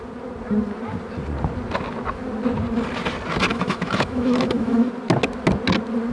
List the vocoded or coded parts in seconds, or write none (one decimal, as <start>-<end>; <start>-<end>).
3.5-4.9